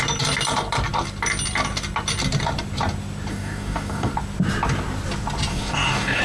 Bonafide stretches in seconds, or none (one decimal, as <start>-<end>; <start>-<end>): 0.0-3.3; 4.1-5.5